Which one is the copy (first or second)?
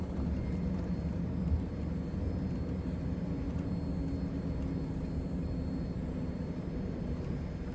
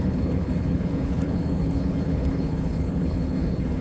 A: second